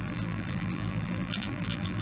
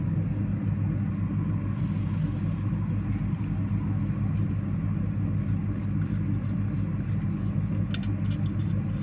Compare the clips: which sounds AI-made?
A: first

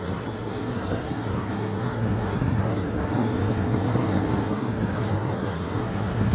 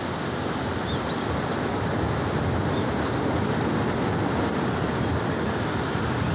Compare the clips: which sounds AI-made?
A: first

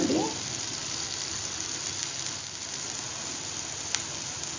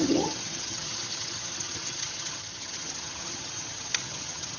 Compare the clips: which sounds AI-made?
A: second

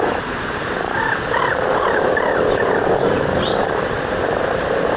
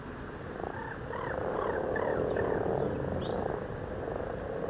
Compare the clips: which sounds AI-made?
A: first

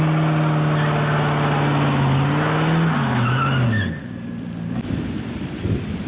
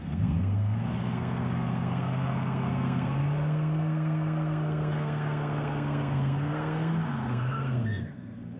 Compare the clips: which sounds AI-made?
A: second